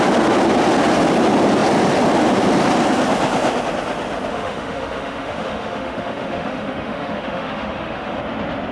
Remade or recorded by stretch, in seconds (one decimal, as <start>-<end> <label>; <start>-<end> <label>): 0.0-4.3 recorded; 4.3-8.2 remade; 8.2-8.7 recorded